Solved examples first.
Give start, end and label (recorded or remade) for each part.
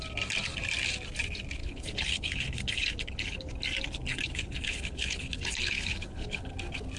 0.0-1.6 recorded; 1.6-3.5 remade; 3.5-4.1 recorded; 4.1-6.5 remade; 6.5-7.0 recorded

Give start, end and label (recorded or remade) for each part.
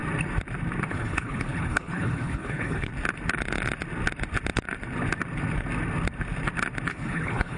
0.0-0.9 recorded; 0.9-2.9 remade; 2.9-6.9 recorded; 6.9-7.6 remade